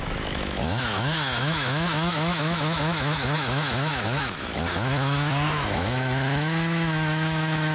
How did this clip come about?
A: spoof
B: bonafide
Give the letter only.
A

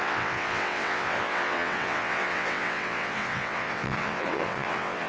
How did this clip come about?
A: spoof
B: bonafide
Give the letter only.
A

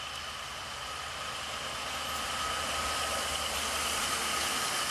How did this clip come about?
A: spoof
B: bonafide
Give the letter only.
B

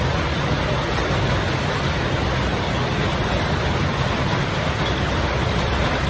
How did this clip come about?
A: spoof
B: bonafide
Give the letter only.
B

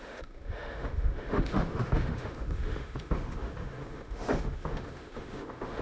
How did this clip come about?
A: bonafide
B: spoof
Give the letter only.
B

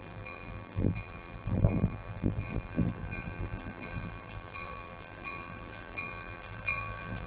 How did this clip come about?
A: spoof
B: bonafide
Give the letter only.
A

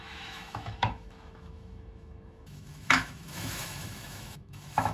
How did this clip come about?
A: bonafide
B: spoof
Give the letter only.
B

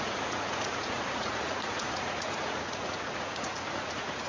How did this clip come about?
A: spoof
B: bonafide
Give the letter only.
A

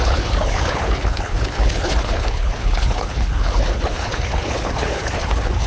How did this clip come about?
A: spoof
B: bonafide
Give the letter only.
A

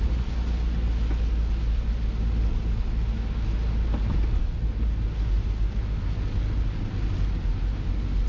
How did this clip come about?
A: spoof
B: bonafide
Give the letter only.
B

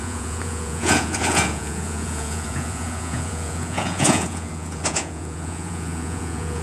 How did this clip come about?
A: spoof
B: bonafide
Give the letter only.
A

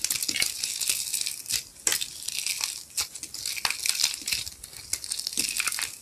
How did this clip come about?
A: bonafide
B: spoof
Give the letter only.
A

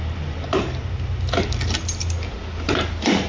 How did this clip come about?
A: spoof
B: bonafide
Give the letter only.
B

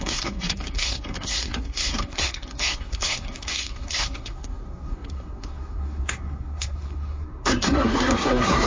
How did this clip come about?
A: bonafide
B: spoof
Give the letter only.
B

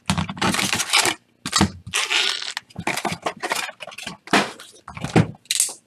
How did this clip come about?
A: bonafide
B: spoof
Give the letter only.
A